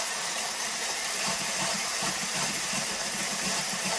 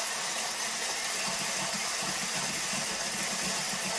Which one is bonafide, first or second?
second